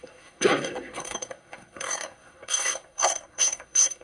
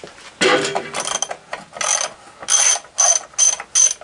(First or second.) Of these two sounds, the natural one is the second